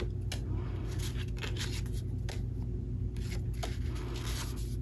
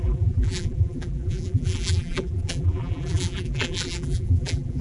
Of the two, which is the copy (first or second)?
second